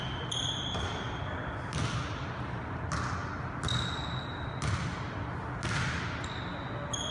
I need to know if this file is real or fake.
real